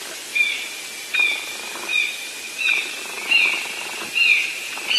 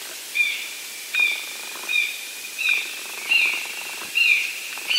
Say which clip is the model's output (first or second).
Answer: second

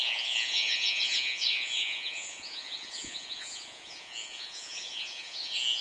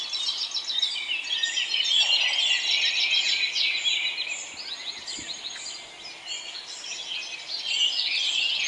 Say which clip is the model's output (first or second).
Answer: first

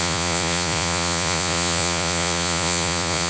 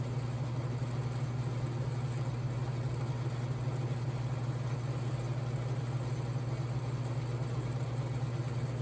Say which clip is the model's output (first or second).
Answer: first